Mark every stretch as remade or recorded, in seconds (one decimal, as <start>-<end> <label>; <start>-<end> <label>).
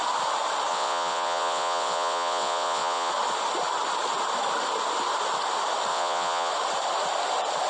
0.0-0.7 recorded; 0.7-3.1 remade; 3.1-5.9 recorded; 5.9-6.5 remade; 6.5-7.7 recorded